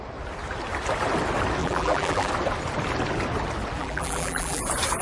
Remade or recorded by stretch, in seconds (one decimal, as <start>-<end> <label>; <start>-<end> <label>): 0.0-1.6 recorded; 1.6-2.3 remade; 2.3-3.8 recorded; 3.8-4.6 remade; 4.6-5.0 recorded